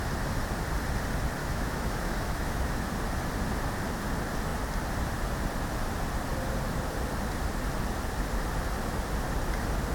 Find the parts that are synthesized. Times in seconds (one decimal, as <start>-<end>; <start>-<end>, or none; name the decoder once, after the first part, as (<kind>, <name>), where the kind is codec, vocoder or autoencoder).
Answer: 1.4-2.7 (autoencoder, DAC-VAE)